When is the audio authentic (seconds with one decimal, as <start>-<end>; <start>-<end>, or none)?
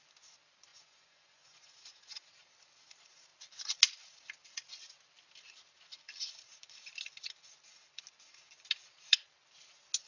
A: 0.0-0.7; 2.3-10.1